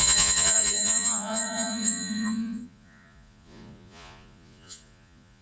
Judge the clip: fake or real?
fake